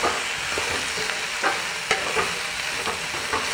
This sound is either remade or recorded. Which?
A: recorded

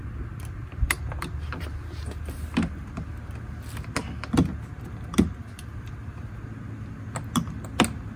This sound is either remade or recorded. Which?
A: recorded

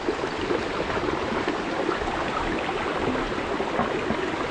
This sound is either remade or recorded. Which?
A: recorded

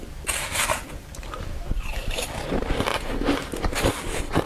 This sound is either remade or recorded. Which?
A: remade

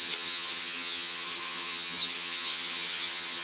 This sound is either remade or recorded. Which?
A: remade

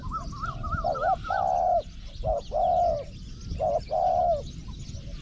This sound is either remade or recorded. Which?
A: recorded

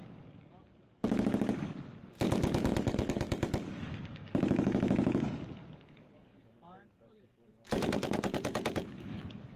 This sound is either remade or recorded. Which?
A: remade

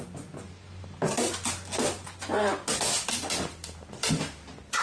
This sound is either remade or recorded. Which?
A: recorded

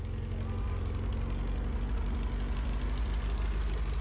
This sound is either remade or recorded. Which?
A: recorded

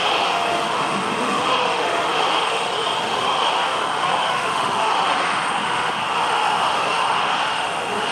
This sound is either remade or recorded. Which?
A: remade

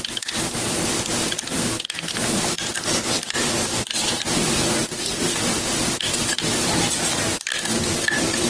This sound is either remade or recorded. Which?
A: recorded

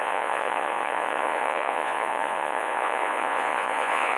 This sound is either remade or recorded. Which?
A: remade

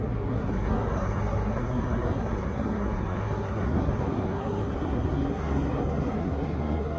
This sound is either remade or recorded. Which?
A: remade